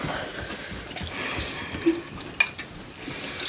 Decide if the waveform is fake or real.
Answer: real